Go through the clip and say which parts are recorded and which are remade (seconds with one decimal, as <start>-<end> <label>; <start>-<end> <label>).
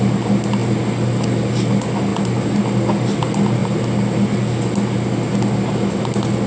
0.0-6.5 recorded